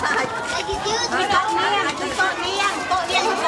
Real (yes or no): yes